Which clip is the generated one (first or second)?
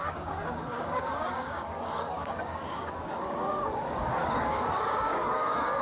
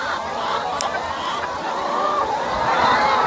first